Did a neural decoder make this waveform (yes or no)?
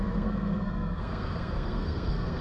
yes